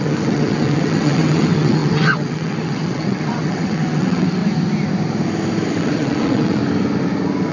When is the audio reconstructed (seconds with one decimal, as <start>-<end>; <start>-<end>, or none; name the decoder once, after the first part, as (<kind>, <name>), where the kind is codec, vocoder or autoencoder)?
0.0-4.4 (vocoder, WaveNeXt); 5.8-6.6

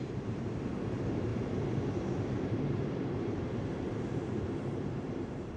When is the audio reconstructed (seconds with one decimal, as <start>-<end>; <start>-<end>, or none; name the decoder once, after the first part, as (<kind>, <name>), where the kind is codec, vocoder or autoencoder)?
0.0-5.6 (vocoder, BigVGAN v2)

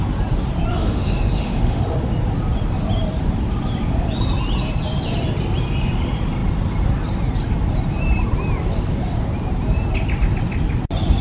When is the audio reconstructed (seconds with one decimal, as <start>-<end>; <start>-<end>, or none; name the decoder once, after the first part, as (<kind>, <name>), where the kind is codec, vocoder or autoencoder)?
0.7-1.8 (autoencoder, DAC-VAE)

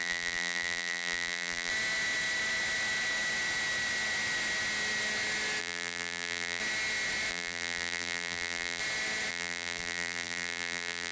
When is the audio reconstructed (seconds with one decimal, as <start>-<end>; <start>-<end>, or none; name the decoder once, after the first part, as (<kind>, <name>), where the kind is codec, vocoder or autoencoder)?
0.0-1.7 (vocoder, BigVGAN v2); 5.6-6.6; 7.3-8.8; 9.3-11.1

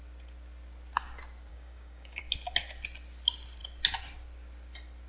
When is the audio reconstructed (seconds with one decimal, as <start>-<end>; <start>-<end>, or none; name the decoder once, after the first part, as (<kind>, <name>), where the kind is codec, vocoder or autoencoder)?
1.5-2.2 (codec, DAC)